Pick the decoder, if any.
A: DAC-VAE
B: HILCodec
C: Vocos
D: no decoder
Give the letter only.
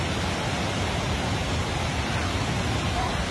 D